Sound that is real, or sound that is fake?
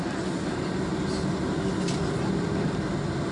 real